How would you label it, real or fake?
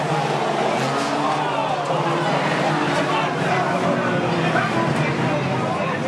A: real